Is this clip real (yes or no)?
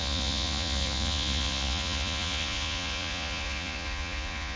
no